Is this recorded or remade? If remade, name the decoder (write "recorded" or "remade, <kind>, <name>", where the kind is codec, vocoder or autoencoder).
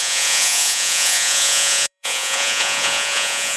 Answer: remade, vocoder, Vocos